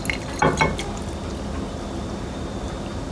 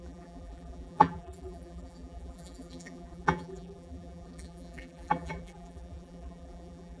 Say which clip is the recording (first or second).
first